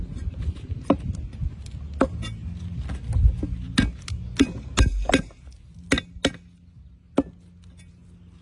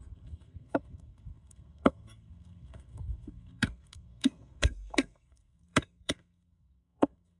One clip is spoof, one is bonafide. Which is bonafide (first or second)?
first